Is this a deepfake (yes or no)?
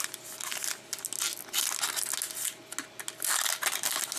no